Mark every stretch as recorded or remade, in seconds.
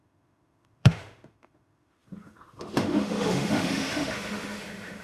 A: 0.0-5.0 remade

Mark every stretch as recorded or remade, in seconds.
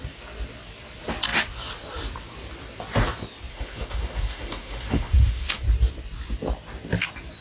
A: 0.0-3.5 recorded; 3.5-5.6 remade; 5.6-7.4 recorded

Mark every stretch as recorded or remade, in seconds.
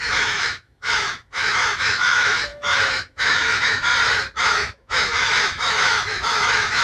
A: 0.0-3.9 remade; 3.9-4.4 recorded; 4.4-6.8 remade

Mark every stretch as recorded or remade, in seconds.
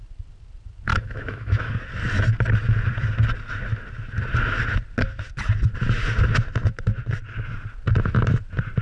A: 0.0-0.9 recorded; 0.9-1.7 remade; 1.7-8.8 recorded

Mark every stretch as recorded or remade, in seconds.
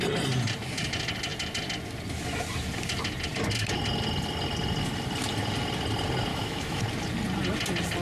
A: 0.0-6.3 recorded; 6.3-6.8 remade; 6.8-8.0 recorded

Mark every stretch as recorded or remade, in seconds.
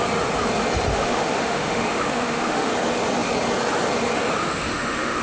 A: 0.0-0.9 recorded; 0.9-2.7 remade; 2.7-4.4 recorded; 4.4-5.2 remade